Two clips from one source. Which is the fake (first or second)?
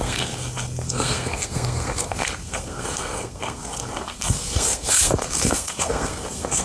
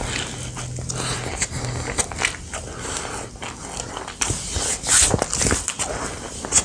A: first